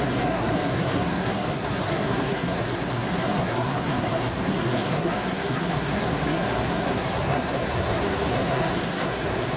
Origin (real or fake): fake